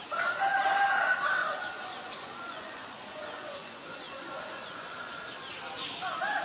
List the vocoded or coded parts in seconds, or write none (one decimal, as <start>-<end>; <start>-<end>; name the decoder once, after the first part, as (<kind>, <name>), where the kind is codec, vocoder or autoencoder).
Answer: 1.4-5.2 (vocoder, Vocos)